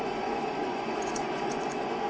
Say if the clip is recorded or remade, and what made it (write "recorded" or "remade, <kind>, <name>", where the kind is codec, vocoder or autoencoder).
remade, vocoder, Vocos